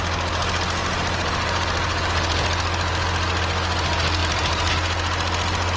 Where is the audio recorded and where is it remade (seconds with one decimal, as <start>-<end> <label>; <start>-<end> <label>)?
0.0-0.8 recorded; 0.8-2.1 remade; 2.1-4.2 recorded; 4.2-4.7 remade; 4.7-5.8 recorded